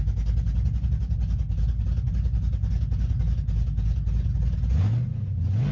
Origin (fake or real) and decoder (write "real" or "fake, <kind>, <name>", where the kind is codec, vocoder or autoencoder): real